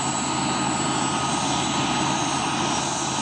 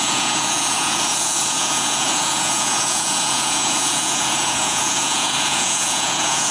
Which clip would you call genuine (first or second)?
first